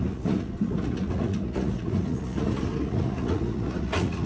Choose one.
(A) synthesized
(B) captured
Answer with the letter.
A